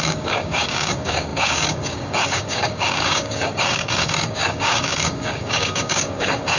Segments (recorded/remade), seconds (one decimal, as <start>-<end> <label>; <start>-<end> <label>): 0.0-6.6 remade